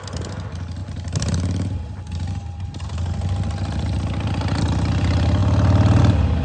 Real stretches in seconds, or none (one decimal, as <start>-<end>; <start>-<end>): 0.0-6.4